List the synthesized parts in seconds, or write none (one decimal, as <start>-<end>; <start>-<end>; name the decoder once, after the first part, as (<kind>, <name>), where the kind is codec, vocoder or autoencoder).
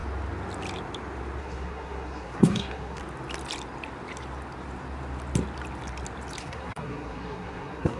1.4-3.0 (codec, SNAC); 6.4-8.0